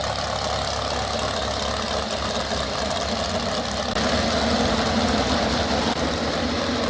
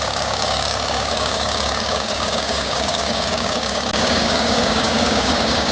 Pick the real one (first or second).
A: first